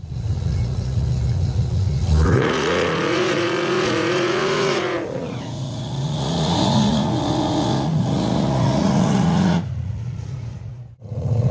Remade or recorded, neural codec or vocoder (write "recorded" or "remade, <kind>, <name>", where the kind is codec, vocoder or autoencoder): remade, vocoder, Vocos